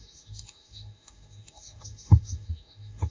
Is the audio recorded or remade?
remade